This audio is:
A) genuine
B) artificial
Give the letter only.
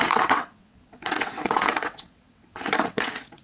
B